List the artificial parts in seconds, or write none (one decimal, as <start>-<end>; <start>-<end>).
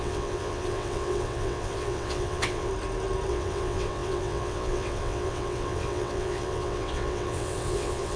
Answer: 0.0-2.7; 3.3-8.2